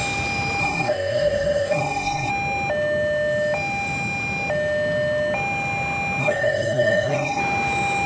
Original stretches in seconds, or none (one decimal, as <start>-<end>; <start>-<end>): 0.0-0.6; 2.3-6.2; 7.4-8.1